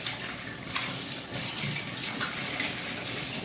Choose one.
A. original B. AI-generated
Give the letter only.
A